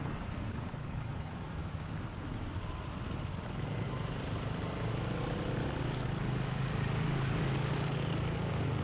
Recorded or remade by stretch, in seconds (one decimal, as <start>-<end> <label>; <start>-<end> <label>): 0.0-1.6 remade; 1.6-5.7 recorded; 5.7-8.8 remade